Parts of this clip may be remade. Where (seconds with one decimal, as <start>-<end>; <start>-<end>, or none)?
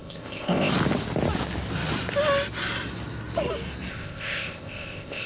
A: 0.0-0.7; 3.9-5.3